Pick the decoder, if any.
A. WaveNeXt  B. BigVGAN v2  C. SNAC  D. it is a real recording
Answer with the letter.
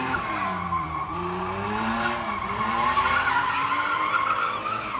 B